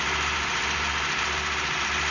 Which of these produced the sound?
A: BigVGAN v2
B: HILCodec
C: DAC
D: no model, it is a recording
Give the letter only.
D